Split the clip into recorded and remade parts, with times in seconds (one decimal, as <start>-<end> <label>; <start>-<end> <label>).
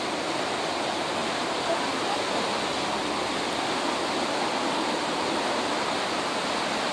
0.0-6.9 recorded